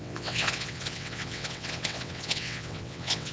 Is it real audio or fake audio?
fake